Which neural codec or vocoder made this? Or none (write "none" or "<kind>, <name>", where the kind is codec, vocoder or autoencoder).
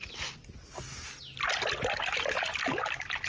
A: none